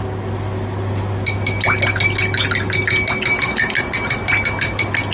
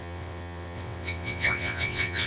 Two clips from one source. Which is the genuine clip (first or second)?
first